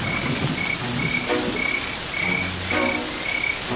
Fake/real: real